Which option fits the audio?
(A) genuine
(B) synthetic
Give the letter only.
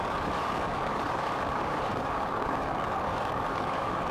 B